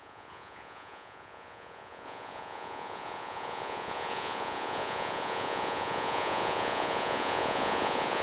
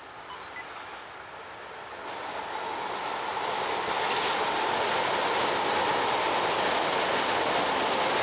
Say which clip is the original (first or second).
second